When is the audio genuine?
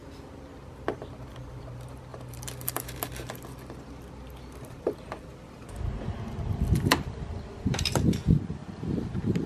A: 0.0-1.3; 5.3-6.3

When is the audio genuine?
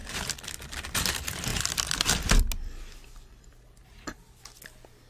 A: 0.0-1.5; 2.4-3.3; 4.1-5.1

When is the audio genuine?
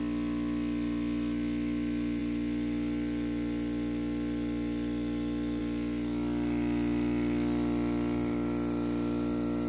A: 0.0-9.7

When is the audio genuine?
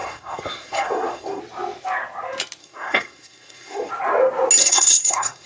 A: 1.4-2.6; 3.9-4.6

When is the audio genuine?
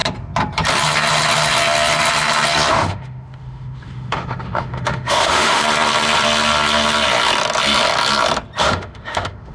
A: 0.0-2.7; 5.6-8.6